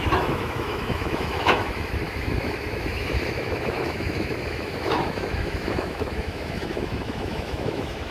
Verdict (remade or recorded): remade